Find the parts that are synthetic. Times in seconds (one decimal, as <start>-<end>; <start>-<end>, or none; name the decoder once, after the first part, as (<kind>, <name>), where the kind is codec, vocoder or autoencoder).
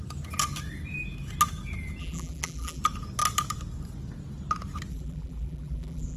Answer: 2.0-2.8 (vocoder, BigVGAN v2); 4.9-6.2